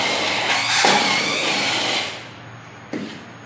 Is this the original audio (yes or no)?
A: no